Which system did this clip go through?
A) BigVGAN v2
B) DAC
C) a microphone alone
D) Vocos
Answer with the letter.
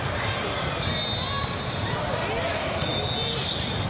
C